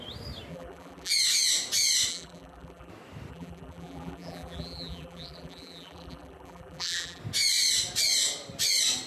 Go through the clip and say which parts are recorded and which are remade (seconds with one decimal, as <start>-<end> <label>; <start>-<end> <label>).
0.0-0.5 recorded; 0.5-1.1 remade; 1.1-2.1 recorded; 2.1-2.9 remade; 2.9-3.3 recorded; 3.3-7.2 remade; 7.2-9.1 recorded